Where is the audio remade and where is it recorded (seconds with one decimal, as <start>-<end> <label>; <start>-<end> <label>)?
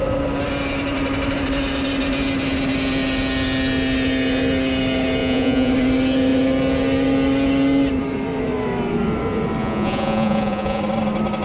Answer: 0.0-5.2 recorded; 5.2-5.7 remade; 5.7-9.6 recorded; 9.6-10.8 remade; 10.8-11.4 recorded